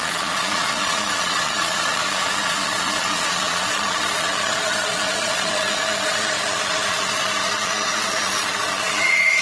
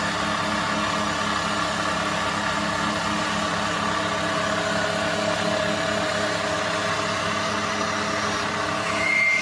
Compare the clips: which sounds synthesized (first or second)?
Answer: first